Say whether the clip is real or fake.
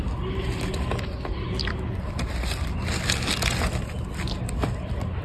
real